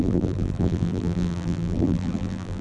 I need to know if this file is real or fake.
fake